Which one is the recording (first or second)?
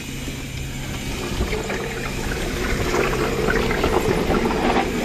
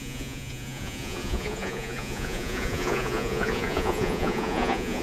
first